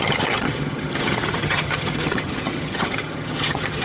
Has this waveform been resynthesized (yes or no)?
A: yes